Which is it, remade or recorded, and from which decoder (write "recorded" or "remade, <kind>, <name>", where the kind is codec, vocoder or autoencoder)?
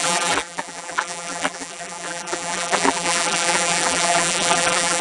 remade, vocoder, BigVGAN v2